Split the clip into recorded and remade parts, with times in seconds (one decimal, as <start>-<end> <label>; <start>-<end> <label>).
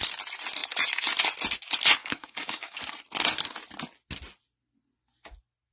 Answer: 0.0-2.0 recorded; 2.0-2.8 remade; 2.8-5.7 recorded